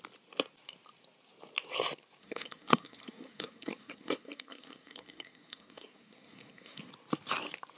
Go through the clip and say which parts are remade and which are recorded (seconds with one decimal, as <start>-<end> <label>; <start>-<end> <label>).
0.0-2.2 recorded; 2.2-6.9 remade; 6.9-7.8 recorded